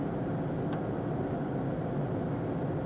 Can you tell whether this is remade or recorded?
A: recorded